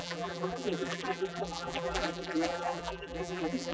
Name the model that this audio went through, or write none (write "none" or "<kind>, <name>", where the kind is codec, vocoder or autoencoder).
vocoder, BigVGAN v2